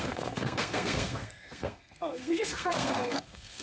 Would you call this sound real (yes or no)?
no